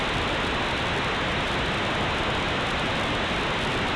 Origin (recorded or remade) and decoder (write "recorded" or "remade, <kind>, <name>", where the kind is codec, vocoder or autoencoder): recorded